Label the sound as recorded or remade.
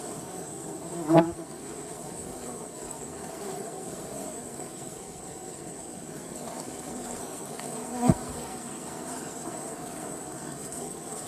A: remade